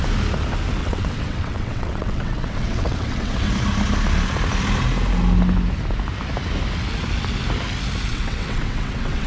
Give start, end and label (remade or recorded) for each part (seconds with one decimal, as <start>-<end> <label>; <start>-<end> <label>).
0.0-0.8 recorded; 0.8-3.5 remade; 3.5-8.1 recorded; 8.1-9.3 remade